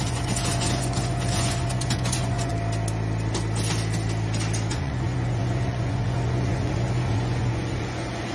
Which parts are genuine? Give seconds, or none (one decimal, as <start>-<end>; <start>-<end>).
2.5-4.7